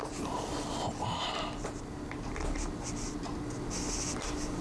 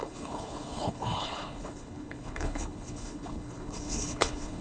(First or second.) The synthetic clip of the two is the second